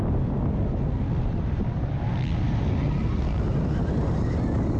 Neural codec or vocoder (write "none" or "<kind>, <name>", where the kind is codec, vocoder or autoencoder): none